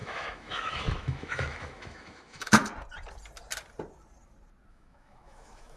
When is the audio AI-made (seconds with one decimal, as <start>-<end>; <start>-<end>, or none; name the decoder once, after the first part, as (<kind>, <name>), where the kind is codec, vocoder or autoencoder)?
0.0-2.6 (autoencoder, DAC-VAE); 4.7-5.8